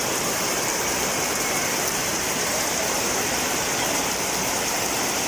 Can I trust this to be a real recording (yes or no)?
no